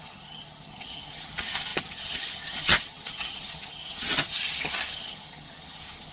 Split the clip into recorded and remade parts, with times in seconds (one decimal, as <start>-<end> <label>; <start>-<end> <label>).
0.0-6.1 remade